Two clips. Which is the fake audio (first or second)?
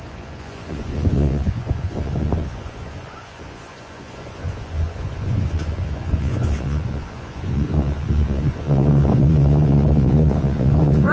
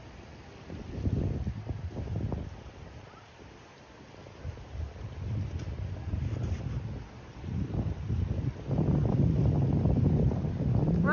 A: first